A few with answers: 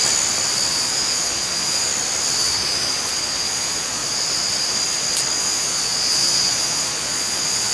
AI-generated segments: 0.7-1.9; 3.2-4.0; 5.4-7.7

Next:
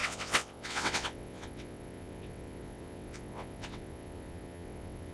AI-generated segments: 0.0-5.1

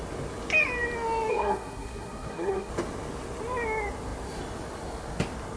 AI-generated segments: 1.3-2.7

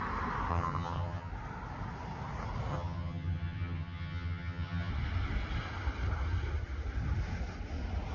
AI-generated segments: 0.5-1.3; 2.7-4.9

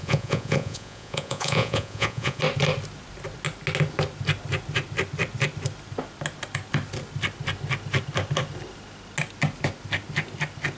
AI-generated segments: 0.0-2.4

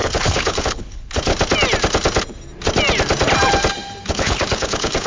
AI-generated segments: 0.0-1.3; 4.1-5.1